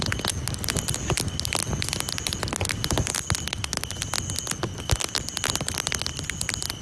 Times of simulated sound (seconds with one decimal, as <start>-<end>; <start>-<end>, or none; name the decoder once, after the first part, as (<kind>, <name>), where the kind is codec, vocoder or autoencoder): none